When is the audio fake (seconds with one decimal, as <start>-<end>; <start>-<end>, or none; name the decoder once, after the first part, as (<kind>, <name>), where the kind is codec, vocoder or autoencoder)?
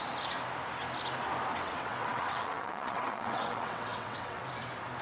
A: 1.5-4.5 (vocoder, WaveNeXt)